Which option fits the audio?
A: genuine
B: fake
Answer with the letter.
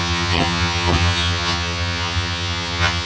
B